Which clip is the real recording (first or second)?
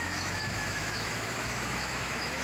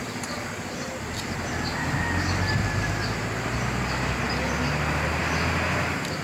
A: second